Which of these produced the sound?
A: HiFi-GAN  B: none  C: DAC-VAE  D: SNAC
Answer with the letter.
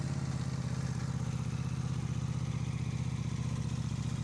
B